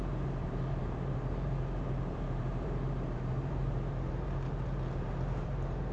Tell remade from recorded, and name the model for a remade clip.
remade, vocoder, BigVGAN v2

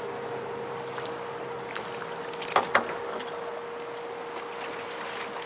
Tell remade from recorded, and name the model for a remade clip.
recorded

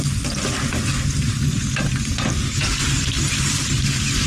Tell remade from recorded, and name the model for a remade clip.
recorded